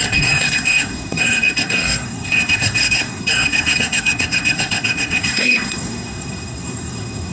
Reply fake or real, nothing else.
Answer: fake